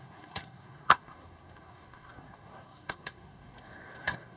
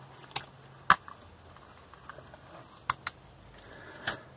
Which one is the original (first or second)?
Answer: second